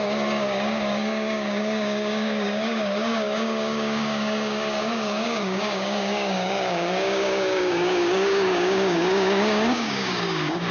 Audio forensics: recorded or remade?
remade